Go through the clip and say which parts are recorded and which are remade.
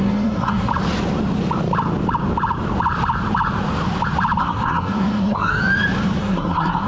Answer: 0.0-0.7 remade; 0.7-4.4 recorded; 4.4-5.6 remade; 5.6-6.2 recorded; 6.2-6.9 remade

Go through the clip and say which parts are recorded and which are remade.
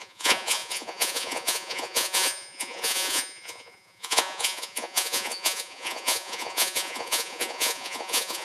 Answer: 0.0-8.4 remade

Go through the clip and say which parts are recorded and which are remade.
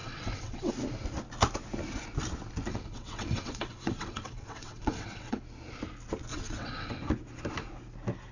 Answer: 0.0-0.7 remade; 0.7-2.7 recorded; 2.7-5.4 remade; 5.4-6.3 recorded; 6.3-7.1 remade; 7.1-8.3 recorded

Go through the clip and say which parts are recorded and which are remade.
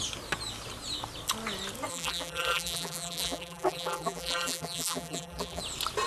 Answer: 0.0-1.9 recorded; 1.9-5.6 remade; 5.6-6.1 recorded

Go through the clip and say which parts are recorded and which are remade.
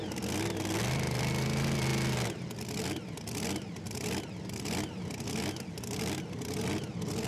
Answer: 0.0-7.3 recorded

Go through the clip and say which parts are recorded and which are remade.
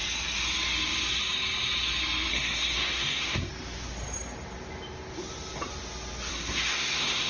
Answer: 0.0-2.3 recorded; 2.3-3.5 remade; 3.5-6.3 recorded; 6.3-7.3 remade